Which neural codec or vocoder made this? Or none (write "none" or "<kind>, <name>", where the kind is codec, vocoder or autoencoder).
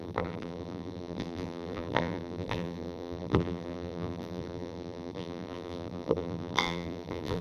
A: vocoder, BigVGAN v2